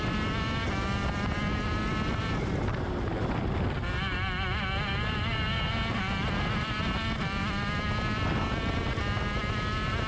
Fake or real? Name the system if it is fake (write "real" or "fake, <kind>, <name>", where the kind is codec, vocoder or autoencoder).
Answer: real